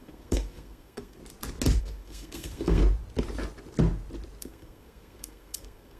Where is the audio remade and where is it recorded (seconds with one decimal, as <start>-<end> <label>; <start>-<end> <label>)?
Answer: 0.0-1.2 remade; 1.2-1.8 recorded; 1.8-2.8 remade; 2.8-4.4 recorded; 4.4-6.0 remade